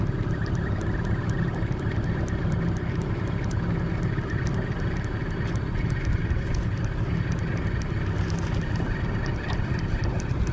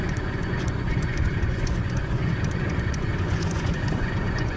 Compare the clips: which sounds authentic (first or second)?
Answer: first